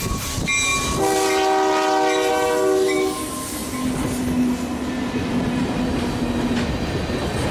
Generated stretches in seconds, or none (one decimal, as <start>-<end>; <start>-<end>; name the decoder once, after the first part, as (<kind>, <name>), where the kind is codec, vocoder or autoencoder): none